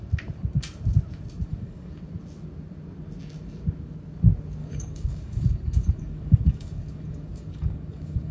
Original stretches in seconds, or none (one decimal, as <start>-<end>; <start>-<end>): 0.0-1.5; 2.0-4.6

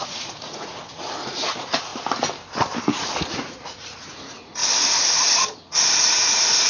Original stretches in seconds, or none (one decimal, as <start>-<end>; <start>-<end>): 1.9-2.8; 4.6-6.0

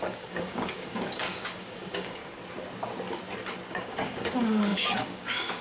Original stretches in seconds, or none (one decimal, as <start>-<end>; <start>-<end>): 2.2-3.7

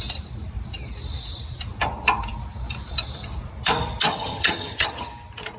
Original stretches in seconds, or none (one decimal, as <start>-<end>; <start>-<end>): 0.0-4.1; 5.1-5.6